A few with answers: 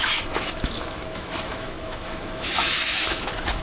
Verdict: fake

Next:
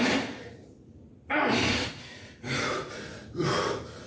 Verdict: fake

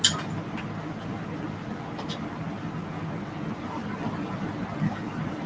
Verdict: real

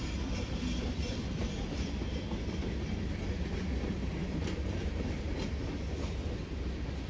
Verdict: real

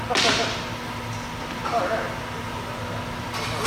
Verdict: real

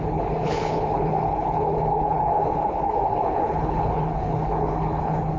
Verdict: fake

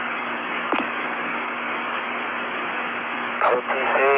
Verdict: fake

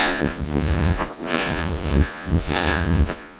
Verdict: fake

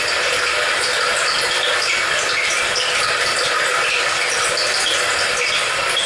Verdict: real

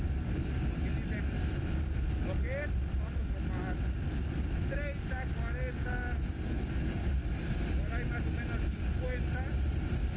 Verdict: real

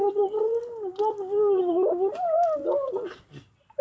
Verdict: real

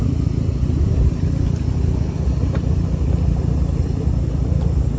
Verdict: real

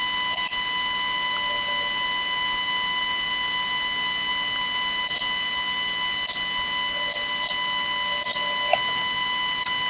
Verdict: real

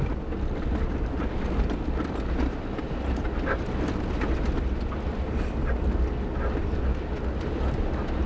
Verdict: real